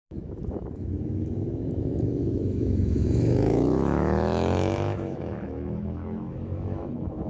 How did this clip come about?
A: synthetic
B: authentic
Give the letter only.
A